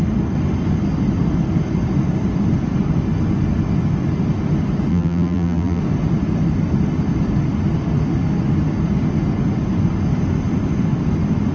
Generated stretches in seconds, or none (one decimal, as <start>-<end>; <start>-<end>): 4.9-5.8